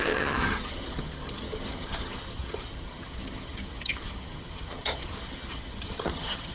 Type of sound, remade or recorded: remade